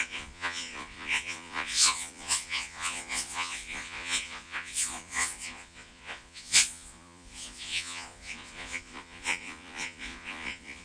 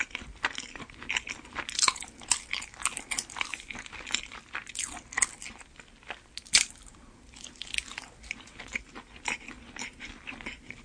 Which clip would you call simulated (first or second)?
first